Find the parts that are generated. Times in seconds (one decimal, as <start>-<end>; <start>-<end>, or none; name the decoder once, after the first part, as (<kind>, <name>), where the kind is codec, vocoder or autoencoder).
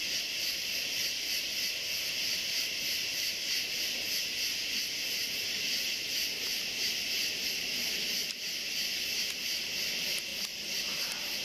none